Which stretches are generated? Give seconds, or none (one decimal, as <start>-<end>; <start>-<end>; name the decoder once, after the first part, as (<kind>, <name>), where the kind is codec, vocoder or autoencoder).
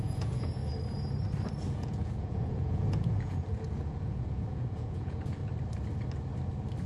0.0-0.6 (vocoder, Vocos); 1.7-5.4